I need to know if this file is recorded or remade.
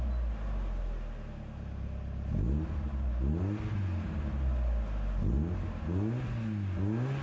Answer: recorded